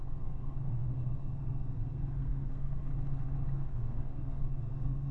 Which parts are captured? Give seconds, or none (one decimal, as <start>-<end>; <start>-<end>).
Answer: 2.9-3.5